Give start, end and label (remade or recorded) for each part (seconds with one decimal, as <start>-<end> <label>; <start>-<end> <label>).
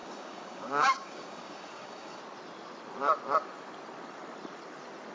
0.0-2.2 remade; 2.2-5.1 recorded